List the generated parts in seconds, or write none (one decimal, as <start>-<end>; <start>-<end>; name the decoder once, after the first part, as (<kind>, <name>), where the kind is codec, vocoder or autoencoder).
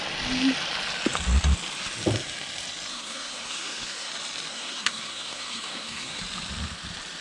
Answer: 2.9-4.1 (codec, SNAC); 4.5-6.2